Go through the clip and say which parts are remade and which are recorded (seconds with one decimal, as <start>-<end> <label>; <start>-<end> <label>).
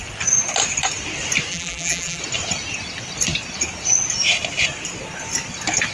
0.0-1.5 recorded; 1.5-2.2 remade; 2.2-5.9 recorded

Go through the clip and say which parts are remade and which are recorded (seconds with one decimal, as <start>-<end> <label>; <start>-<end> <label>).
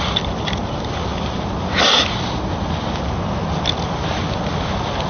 0.0-5.1 recorded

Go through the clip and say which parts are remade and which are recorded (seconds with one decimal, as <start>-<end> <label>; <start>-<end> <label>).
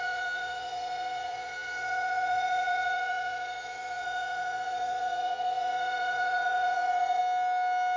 0.0-7.2 remade; 7.2-8.0 recorded